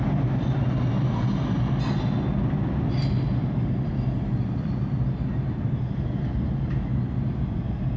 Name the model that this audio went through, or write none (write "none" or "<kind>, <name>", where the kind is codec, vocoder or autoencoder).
none